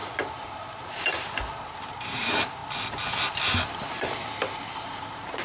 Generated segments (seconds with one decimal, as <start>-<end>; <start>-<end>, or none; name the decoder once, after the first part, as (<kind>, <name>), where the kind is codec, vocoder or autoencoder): 0.0-2.6 (vocoder, BigVGAN v2); 4.8-5.4